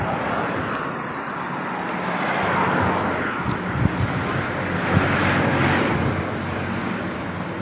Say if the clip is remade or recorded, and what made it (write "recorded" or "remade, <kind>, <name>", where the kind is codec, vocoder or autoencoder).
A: recorded